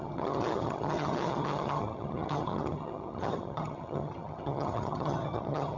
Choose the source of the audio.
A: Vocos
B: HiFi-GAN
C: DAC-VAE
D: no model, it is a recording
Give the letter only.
B